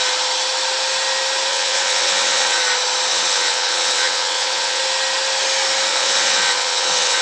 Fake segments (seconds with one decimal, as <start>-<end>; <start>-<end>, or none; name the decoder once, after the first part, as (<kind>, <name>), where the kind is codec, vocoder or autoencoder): 1.5-2.6 (vocoder, WaveNeXt); 3.1-4.8; 5.9-7.2